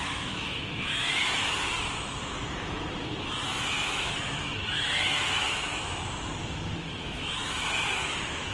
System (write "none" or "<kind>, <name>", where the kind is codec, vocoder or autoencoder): autoencoder, DAC-VAE